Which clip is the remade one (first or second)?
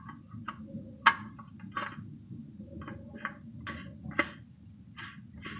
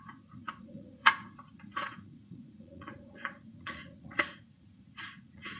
second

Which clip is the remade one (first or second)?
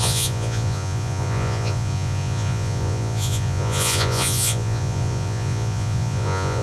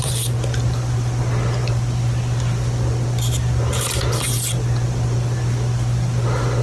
first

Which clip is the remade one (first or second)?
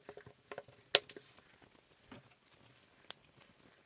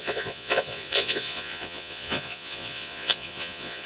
second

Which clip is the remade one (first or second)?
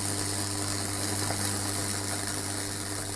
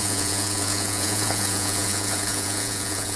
second